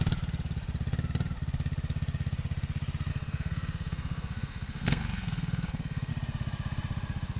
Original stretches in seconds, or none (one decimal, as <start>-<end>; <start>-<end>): 0.0-3.1; 6.1-7.4